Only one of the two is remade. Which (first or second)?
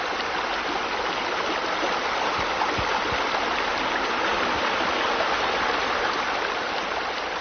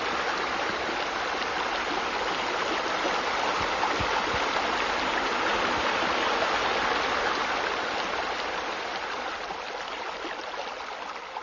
first